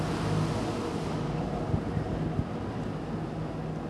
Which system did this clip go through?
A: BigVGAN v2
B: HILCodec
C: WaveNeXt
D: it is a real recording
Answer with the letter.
D